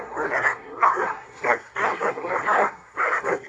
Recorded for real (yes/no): no